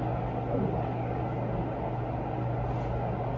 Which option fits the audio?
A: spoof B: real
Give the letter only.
B